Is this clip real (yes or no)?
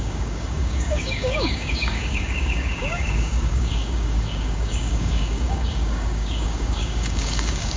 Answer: no